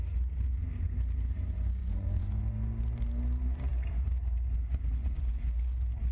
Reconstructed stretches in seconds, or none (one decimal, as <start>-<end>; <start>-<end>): 1.8-2.4